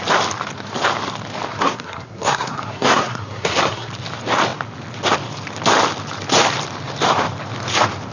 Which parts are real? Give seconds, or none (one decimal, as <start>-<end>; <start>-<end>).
0.0-1.5; 3.9-8.1